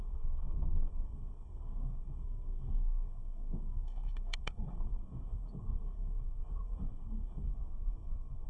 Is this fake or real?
fake